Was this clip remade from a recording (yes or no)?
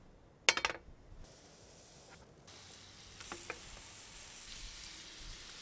no